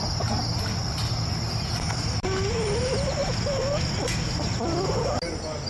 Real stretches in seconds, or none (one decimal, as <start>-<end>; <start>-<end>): 0.0-5.7